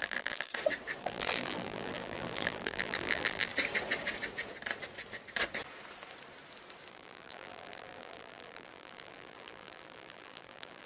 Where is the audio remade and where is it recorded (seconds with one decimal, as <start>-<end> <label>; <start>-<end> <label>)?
0.0-0.5 remade; 0.5-1.0 recorded; 1.0-3.5 remade; 3.5-6.9 recorded; 6.9-10.9 remade